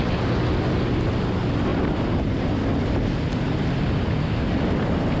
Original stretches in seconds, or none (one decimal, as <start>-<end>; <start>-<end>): 0.0-5.2